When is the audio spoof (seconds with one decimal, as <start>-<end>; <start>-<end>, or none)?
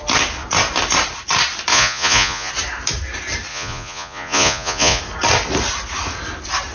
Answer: 1.7-2.5; 3.5-5.0